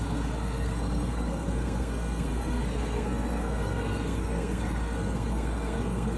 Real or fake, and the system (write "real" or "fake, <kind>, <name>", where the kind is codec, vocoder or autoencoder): fake, codec, SNAC